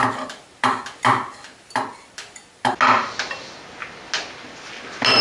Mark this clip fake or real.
real